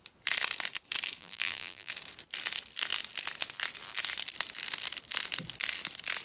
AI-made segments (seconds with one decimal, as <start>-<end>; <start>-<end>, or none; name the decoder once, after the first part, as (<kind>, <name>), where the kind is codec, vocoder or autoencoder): 1.2-1.9 (vocoder, BigVGAN v2)